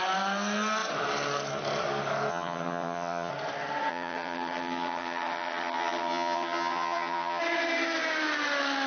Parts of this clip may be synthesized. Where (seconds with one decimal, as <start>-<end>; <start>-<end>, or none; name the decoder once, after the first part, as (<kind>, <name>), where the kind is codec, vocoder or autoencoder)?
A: 2.3-3.3 (vocoder, HiFi-GAN); 3.9-7.4